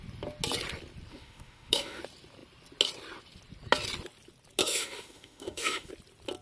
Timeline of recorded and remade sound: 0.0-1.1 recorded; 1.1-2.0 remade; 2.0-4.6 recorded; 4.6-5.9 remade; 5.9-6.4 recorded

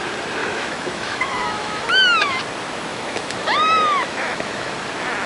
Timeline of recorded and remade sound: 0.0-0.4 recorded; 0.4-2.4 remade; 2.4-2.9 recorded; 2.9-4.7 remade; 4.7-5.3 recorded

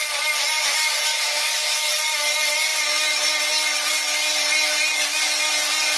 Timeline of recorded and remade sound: 0.0-1.1 recorded; 1.1-1.9 remade; 1.9-6.0 recorded